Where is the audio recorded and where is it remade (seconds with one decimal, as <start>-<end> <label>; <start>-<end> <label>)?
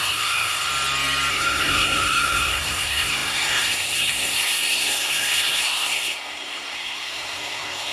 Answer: 0.0-0.7 remade; 0.7-1.3 recorded; 1.3-7.9 remade